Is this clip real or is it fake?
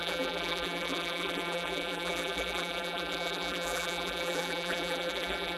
fake